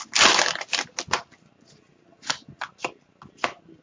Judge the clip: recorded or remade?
recorded